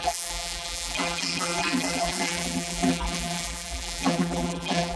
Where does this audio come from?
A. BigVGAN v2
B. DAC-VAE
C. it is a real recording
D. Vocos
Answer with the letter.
A